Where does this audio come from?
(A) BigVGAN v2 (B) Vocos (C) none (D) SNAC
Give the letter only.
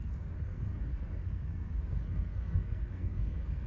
D